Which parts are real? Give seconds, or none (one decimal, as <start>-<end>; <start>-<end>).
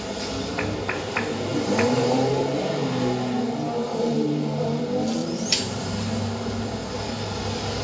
0.0-1.5; 2.6-3.9; 4.8-5.2; 5.9-7.8